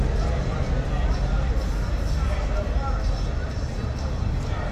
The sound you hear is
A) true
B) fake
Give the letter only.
A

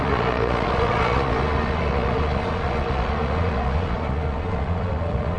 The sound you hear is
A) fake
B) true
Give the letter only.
A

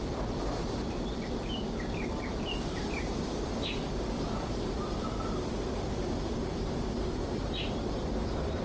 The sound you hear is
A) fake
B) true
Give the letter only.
A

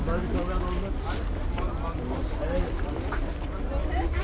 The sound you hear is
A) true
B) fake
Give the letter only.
A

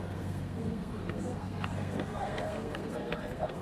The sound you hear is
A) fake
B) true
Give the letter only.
A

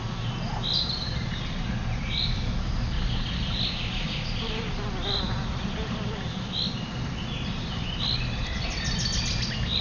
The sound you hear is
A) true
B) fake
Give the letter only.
A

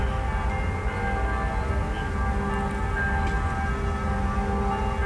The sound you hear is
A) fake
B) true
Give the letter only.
B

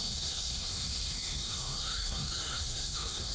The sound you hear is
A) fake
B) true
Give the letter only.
A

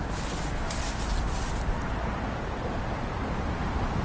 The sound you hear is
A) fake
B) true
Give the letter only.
B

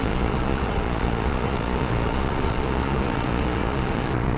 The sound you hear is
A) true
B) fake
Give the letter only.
B